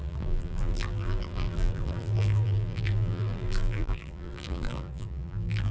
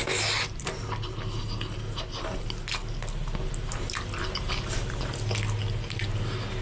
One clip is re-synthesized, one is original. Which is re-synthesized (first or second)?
first